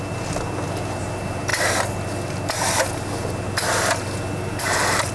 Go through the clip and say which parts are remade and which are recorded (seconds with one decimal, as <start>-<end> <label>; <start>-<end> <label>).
0.0-5.1 recorded